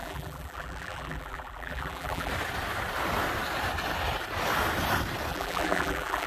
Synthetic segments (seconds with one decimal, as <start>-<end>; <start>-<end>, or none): 0.0-2.3; 5.3-6.3